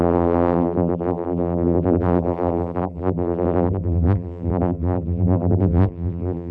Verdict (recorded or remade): remade